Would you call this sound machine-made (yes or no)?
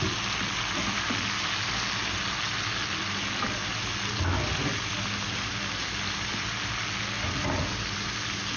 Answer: no